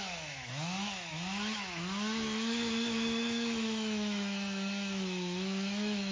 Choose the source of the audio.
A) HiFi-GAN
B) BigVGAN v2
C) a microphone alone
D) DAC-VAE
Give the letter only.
D